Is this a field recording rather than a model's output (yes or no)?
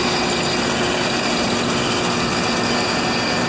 yes